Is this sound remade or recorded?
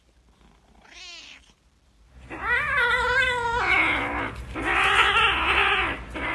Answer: recorded